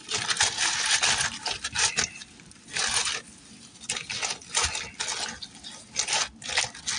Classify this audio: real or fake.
real